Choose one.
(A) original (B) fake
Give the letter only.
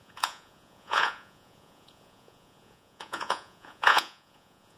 B